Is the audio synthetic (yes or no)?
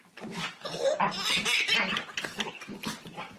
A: no